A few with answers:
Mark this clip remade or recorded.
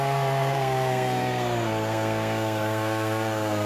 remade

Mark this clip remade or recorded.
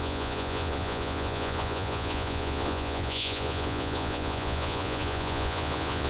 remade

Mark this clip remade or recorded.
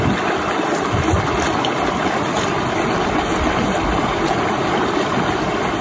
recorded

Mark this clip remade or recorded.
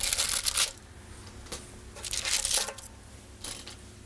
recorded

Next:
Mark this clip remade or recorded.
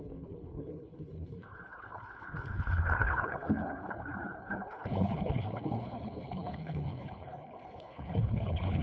remade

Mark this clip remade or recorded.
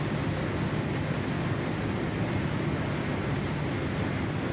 recorded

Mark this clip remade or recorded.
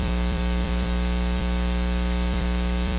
remade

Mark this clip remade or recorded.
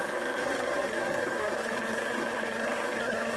remade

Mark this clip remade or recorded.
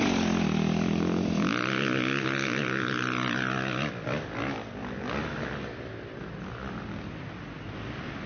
recorded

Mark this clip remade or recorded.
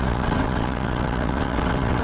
remade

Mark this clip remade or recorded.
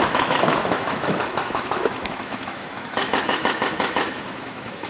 remade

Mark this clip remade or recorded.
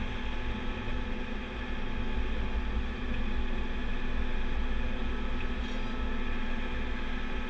recorded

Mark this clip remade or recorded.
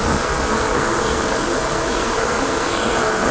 remade